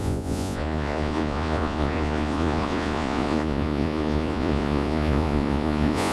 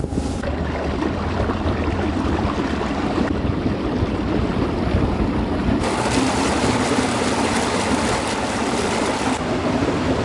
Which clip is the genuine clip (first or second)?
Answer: second